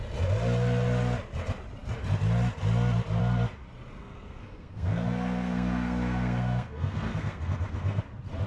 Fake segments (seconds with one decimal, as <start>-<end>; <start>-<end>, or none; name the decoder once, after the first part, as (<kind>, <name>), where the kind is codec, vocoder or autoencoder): 4.0-8.0 (codec, SNAC)